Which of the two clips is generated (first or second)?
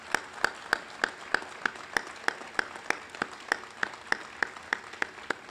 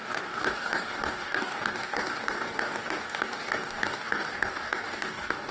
second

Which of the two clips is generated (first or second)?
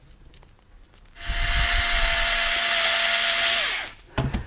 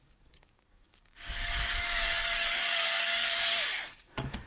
second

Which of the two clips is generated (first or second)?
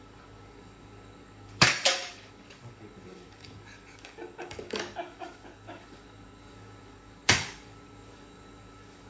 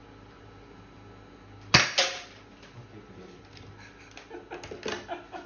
first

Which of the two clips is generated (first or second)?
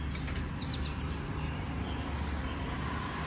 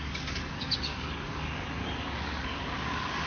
second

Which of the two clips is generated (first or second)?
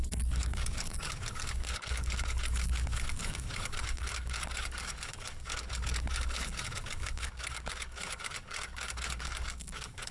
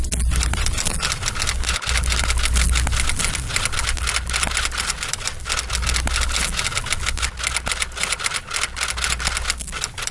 first